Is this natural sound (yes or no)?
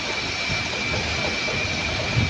yes